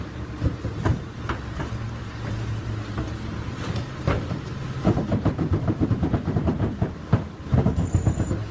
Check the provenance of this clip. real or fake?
fake